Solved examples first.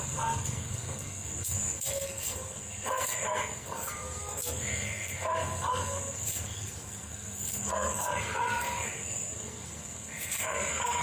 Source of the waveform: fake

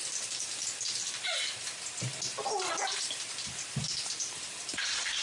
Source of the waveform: real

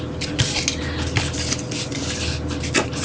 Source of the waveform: real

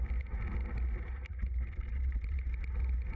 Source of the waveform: real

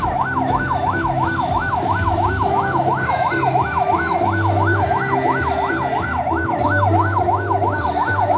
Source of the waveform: fake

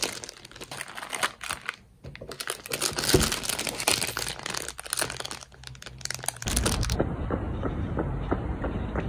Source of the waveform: real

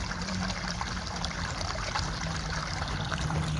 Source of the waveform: fake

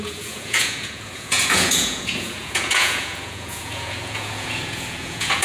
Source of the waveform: fake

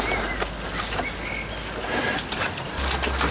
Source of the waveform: real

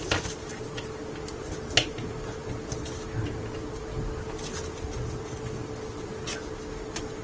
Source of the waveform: real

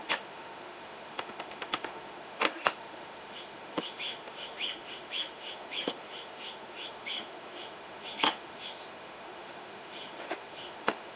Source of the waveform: fake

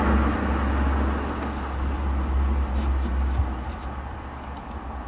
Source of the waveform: real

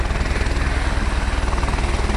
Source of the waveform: real